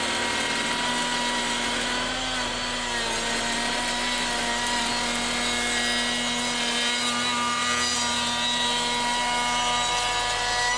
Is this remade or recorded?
recorded